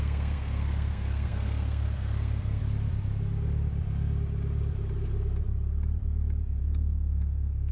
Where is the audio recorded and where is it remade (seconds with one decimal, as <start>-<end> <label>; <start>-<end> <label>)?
0.0-2.6 remade; 2.6-6.6 recorded; 6.6-7.7 remade